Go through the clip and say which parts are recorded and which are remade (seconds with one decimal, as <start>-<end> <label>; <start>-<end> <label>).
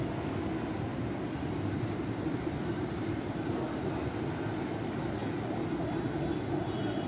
0.0-0.9 recorded; 0.9-3.6 remade; 3.6-7.1 recorded